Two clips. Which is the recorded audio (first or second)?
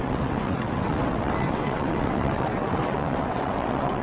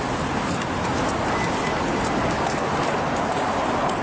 second